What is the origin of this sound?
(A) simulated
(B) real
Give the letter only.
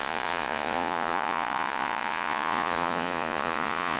A